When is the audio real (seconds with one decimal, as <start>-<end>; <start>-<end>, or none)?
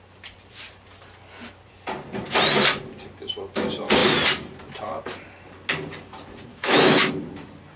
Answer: 0.0-6.5; 7.1-7.8